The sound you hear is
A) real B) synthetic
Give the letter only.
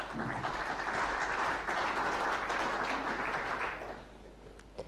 A